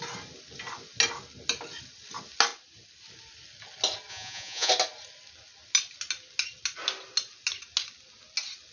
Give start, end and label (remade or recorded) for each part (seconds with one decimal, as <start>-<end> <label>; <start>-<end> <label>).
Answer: 0.0-4.1 recorded; 4.1-4.7 remade; 4.7-8.7 recorded

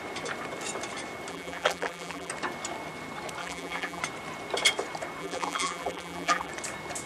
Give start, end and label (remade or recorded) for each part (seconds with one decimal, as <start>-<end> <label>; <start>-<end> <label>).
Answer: 0.0-1.3 recorded; 1.3-2.3 remade; 2.3-3.4 recorded; 3.4-4.0 remade; 4.0-5.2 recorded; 5.2-6.5 remade; 6.5-7.1 recorded

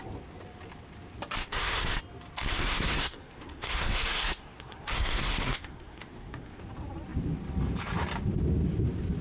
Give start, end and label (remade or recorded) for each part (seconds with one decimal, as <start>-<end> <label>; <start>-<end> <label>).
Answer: 0.0-1.4 recorded; 1.4-2.0 remade; 2.0-2.5 recorded; 2.5-6.6 remade; 6.6-9.2 recorded

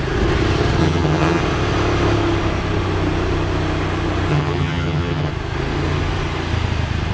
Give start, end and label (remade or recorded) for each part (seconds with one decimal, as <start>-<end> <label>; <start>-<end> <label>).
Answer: 0.0-0.8 recorded; 0.8-1.4 remade; 1.4-4.3 recorded; 4.3-5.3 remade; 5.3-7.1 recorded

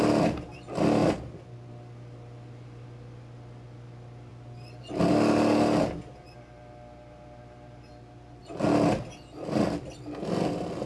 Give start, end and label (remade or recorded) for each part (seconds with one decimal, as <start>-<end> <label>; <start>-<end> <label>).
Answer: 0.0-10.9 recorded

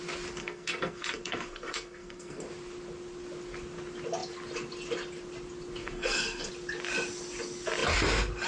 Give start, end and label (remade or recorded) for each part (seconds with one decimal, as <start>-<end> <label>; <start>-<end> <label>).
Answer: 0.0-0.4 recorded; 0.4-2.5 remade; 2.5-5.8 recorded; 5.8-6.5 remade; 6.5-8.5 recorded

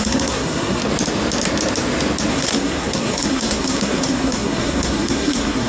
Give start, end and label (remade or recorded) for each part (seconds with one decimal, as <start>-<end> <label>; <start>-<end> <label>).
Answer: 0.0-0.8 remade; 0.8-2.3 recorded; 2.3-5.7 remade

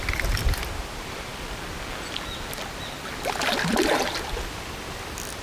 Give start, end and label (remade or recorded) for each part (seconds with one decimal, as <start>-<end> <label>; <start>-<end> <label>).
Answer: 0.0-1.3 remade; 1.3-4.0 recorded; 4.0-5.4 remade